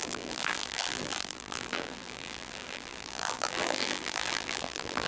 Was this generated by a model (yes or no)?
yes